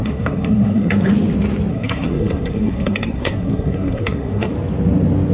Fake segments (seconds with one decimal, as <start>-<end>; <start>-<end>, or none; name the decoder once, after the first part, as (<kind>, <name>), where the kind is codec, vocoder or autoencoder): 0.0-1.1 (codec, SNAC); 1.7-4.5